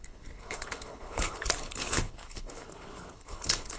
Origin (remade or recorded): remade